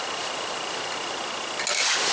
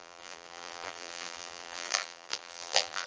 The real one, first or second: first